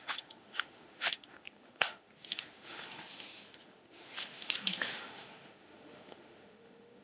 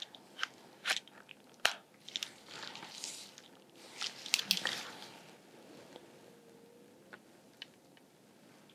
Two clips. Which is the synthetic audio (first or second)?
first